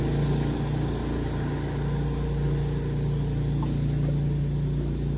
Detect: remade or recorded recorded